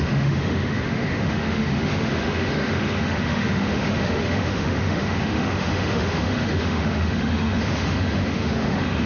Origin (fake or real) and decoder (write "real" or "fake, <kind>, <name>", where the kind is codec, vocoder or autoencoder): fake, autoencoder, DAC-VAE